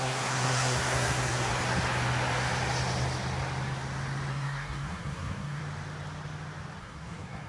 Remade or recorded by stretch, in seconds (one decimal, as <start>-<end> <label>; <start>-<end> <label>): 0.0-1.5 remade; 1.5-4.3 recorded; 4.3-5.6 remade; 5.6-6.8 recorded; 6.8-7.5 remade

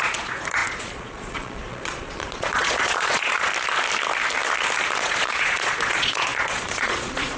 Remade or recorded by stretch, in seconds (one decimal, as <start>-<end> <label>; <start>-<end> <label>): 0.0-3.5 remade; 3.5-5.0 recorded; 5.0-7.4 remade

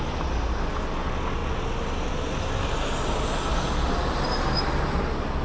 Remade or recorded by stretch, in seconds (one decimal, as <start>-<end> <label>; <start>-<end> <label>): 0.0-5.4 recorded

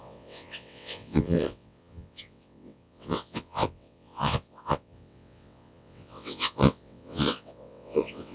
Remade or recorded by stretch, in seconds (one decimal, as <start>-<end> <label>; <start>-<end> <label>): 0.0-8.3 remade

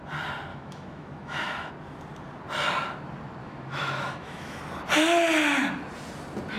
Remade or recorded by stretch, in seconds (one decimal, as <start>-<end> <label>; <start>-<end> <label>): 0.0-0.5 recorded; 0.5-1.7 remade; 1.7-3.4 recorded; 3.4-4.6 remade; 4.6-6.6 recorded

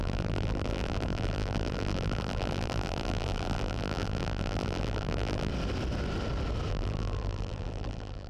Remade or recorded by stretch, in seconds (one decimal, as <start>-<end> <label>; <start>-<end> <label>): 0.0-5.5 remade; 5.5-6.7 recorded; 6.7-8.3 remade

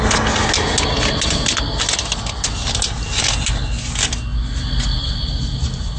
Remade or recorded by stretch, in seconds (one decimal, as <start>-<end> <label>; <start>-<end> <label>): 0.0-6.0 recorded

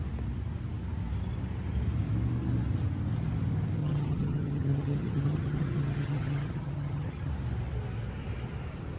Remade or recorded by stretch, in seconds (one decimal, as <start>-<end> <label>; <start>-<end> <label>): 0.0-3.8 recorded; 3.8-7.3 remade; 7.3-9.0 recorded